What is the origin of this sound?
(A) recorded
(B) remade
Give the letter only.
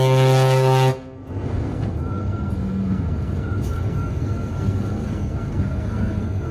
B